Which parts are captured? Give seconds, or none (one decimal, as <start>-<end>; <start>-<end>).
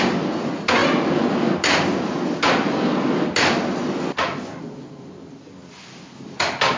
0.0-6.8